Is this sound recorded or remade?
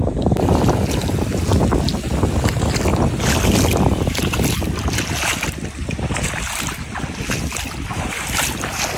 recorded